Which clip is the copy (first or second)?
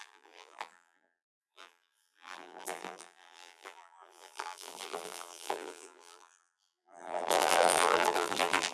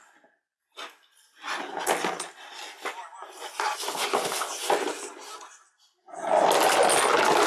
first